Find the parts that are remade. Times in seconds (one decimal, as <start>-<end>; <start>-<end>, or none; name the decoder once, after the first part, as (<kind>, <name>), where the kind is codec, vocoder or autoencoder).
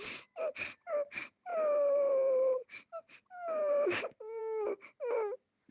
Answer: 1.5-4.4 (vocoder, BigVGAN v2)